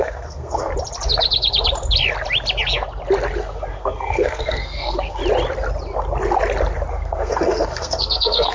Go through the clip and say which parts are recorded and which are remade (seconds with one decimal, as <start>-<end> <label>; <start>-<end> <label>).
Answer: 0.0-0.7 remade; 0.7-3.4 recorded; 3.4-5.2 remade; 5.2-6.9 recorded; 6.9-8.5 remade